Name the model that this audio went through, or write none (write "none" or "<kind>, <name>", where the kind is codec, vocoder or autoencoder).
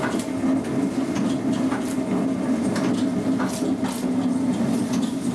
none